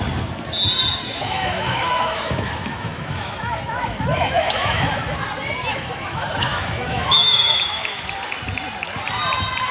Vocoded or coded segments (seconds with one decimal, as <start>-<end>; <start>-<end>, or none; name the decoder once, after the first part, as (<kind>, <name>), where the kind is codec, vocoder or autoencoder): 1.0-5.2 (autoencoder, DAC-VAE); 5.7-8.1